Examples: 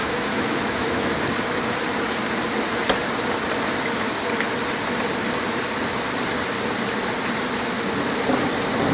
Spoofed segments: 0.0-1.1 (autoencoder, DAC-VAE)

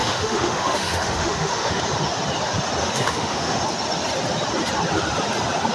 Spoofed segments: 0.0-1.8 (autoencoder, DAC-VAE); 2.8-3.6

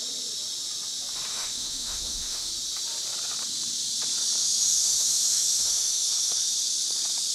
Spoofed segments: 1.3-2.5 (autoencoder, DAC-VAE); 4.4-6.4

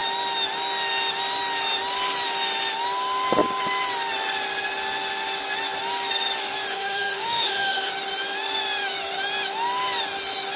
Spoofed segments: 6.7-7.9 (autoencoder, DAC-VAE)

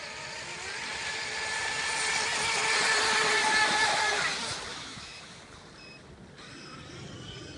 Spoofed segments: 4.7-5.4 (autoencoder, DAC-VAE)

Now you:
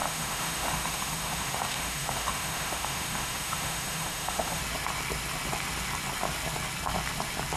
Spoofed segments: 0.0-4.6 (autoencoder, DAC-VAE)

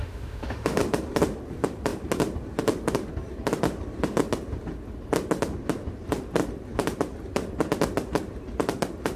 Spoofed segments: 0.0-0.8 (autoencoder, DAC-VAE)

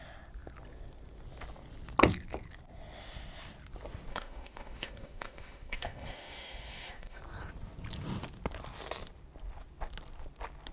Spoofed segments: 4.1-7.2 (autoencoder, DAC-VAE)